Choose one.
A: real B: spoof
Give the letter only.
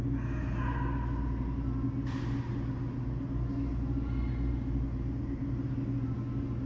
A